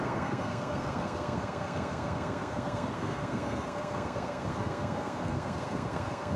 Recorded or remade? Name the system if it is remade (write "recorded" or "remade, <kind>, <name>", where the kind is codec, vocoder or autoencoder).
remade, codec, SNAC